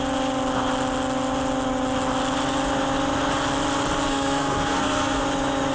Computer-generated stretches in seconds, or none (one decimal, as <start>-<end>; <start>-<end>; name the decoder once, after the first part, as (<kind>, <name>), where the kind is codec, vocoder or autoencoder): 4.1-5.2 (codec, SNAC)